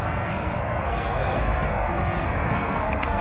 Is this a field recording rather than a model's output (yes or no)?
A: no